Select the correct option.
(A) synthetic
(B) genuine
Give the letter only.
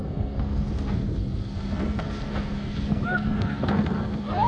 A